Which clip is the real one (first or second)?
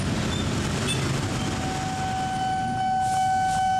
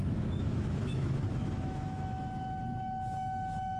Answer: first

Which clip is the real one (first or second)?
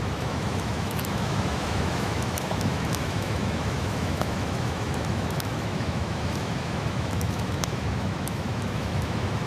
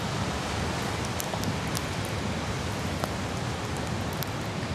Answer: second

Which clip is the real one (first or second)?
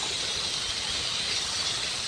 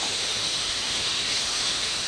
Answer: first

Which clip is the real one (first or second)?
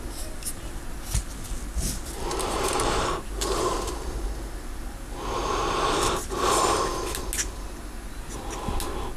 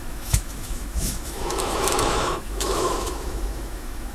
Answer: first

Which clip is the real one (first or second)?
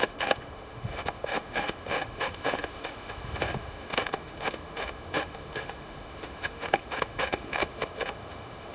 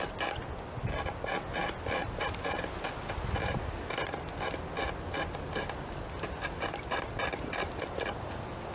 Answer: second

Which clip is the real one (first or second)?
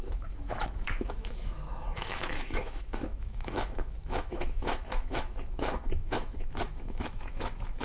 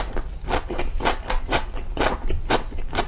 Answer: second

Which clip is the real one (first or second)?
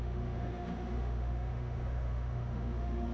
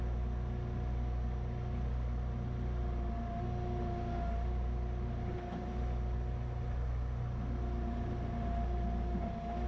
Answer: second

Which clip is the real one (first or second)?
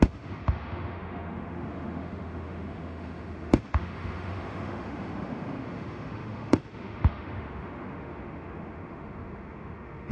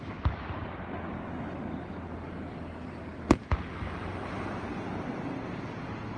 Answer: second